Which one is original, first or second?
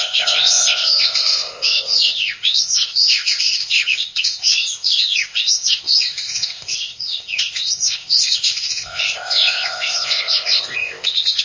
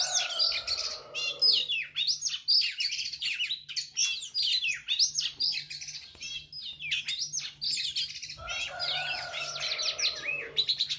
second